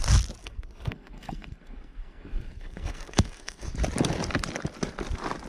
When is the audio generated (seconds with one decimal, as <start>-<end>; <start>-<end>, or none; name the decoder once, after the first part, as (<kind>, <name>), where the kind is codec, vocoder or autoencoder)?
0.4-3.7 (codec, SNAC)